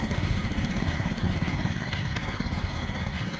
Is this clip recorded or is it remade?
remade